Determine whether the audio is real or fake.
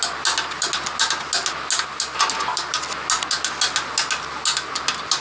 real